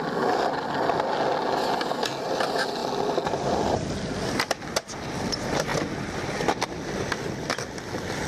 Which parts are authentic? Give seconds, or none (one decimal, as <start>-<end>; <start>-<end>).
0.0-8.3